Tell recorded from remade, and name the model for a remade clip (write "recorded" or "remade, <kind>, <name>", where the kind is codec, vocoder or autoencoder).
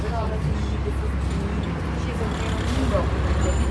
recorded